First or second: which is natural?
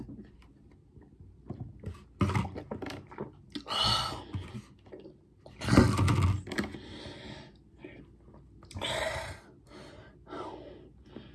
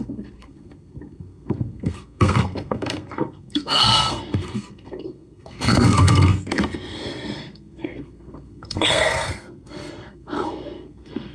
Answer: first